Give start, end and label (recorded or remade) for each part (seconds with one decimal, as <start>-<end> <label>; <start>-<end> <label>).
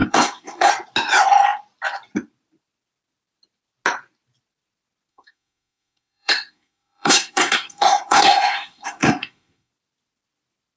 0.0-0.7 remade; 0.7-5.1 recorded; 5.1-9.7 remade; 9.7-10.8 recorded